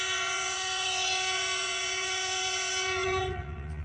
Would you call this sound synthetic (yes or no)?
yes